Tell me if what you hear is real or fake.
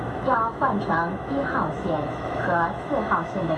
fake